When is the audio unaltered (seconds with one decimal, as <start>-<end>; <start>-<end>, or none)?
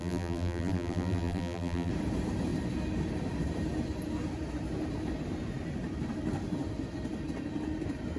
1.9-8.2